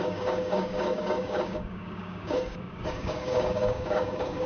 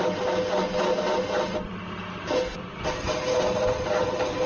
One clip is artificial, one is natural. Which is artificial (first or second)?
first